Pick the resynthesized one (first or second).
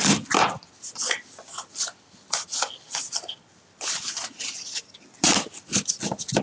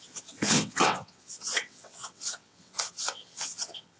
second